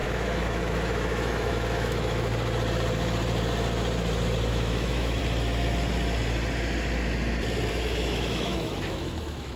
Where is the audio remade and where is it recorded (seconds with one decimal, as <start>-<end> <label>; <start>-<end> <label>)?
0.0-2.3 remade; 2.3-4.5 recorded; 4.5-5.2 remade; 5.2-7.7 recorded; 7.7-9.6 remade